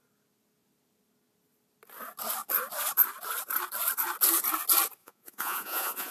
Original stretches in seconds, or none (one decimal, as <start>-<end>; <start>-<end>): 0.0-5.0